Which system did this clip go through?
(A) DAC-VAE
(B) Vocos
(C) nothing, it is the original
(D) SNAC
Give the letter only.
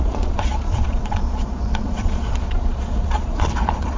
B